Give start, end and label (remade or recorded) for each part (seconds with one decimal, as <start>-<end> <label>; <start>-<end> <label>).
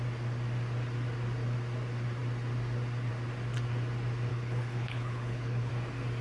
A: 0.0-4.3 recorded; 4.3-5.7 remade; 5.7-6.2 recorded